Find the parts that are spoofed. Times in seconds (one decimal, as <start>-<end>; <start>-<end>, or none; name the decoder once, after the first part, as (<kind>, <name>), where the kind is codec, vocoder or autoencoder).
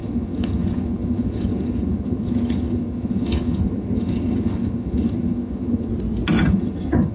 0.0-5.9 (vocoder, HiFi-GAN); 6.4-7.1